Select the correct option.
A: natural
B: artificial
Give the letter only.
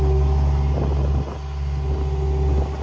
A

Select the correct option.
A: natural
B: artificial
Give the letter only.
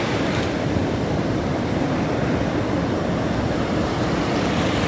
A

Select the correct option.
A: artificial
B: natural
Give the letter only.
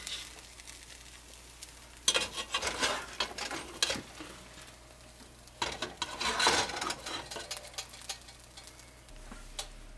B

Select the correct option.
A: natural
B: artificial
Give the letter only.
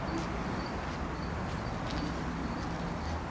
A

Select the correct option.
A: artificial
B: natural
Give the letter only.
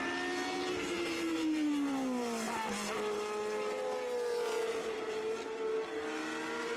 B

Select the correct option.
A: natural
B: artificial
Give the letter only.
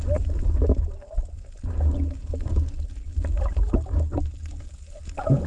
A